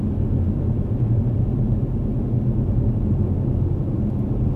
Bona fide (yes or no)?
yes